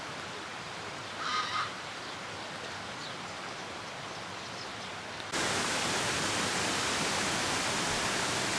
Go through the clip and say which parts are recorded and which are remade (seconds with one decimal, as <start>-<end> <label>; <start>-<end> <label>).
0.0-8.6 recorded